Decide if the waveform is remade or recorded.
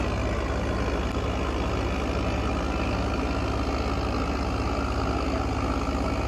recorded